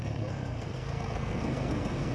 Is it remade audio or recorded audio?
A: remade